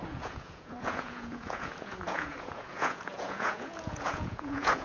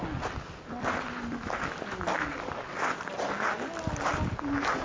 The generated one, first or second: first